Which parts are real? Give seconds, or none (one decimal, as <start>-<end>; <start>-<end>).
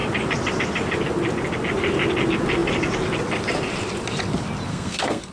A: 0.0-4.7